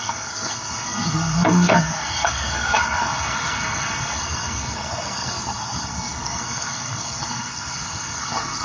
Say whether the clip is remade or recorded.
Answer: remade